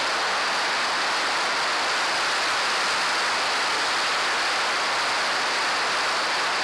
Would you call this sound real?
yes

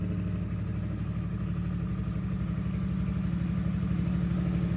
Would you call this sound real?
yes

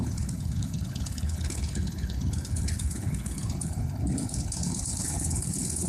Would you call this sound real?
no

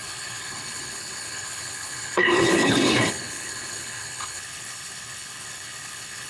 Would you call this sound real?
no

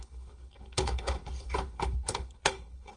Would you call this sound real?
no